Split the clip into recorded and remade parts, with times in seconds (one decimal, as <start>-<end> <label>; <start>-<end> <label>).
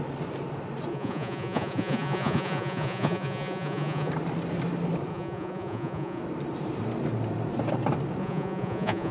0.0-0.9 recorded; 0.9-4.1 remade; 4.1-5.1 recorded; 5.1-6.2 remade; 6.2-8.2 recorded; 8.2-9.1 remade